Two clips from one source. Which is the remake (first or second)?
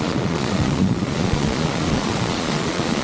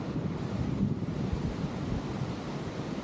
first